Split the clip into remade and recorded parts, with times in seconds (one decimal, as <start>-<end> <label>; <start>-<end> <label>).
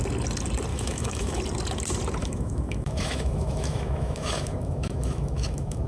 0.0-0.7 recorded; 0.7-1.4 remade; 1.4-2.2 recorded; 2.2-5.9 remade